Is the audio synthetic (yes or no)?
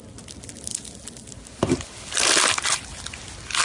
no